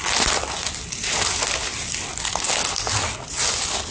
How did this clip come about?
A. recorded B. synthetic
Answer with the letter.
A